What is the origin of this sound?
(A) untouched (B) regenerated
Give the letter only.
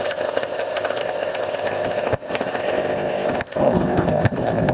B